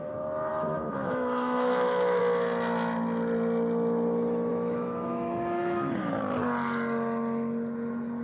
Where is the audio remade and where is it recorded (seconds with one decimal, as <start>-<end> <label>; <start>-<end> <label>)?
0.0-0.5 recorded; 0.5-2.2 remade; 2.2-4.5 recorded; 4.5-5.9 remade; 5.9-8.2 recorded